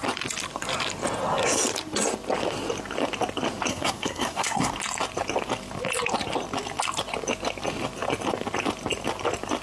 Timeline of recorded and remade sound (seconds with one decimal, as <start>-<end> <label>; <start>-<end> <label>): 0.0-3.7 recorded; 3.7-4.7 remade; 4.7-9.6 recorded